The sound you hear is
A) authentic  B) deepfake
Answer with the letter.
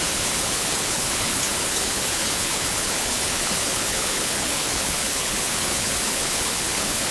B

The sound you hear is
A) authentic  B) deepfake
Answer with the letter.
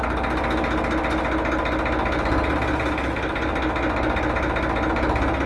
A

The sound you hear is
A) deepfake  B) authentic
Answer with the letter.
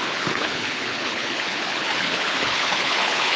A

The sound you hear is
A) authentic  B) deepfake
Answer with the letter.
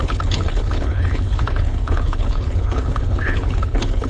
B